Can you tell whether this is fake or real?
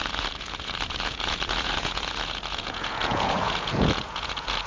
fake